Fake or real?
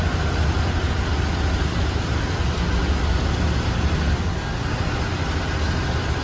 real